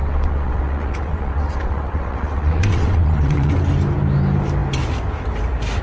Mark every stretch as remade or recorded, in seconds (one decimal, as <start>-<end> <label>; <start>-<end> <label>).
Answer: 0.0-3.5 remade; 3.5-5.8 recorded